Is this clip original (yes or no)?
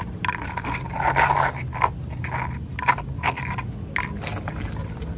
yes